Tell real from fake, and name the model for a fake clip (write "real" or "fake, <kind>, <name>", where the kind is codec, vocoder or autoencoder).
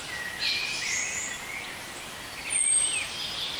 real